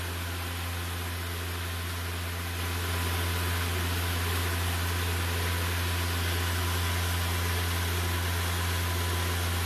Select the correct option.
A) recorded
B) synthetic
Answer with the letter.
A